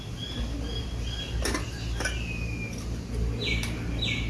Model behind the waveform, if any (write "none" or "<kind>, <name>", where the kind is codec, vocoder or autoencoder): none